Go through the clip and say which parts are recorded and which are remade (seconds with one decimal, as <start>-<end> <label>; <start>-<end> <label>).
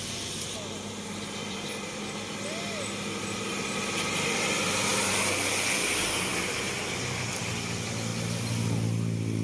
0.0-1.4 recorded; 1.4-2.0 remade; 2.0-6.3 recorded; 6.3-7.4 remade; 7.4-9.4 recorded